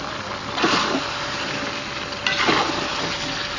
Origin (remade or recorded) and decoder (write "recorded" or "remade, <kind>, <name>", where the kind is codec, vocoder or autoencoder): recorded